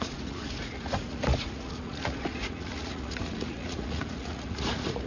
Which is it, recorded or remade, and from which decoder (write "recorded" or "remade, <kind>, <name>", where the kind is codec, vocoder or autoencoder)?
remade, vocoder, Vocos